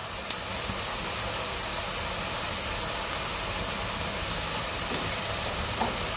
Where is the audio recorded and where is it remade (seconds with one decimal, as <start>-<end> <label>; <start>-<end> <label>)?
0.0-6.2 recorded